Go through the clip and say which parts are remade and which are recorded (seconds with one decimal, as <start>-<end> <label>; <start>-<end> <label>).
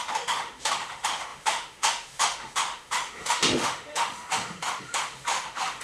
0.0-5.8 remade